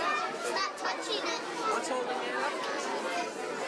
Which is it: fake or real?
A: real